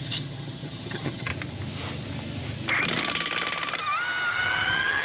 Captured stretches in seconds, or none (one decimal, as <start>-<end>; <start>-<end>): 1.3-4.3